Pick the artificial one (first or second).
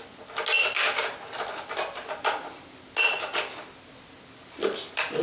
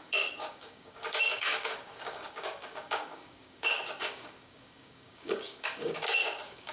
second